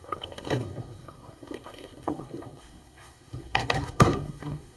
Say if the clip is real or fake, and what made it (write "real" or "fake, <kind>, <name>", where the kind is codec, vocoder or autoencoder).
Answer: fake, codec, SNAC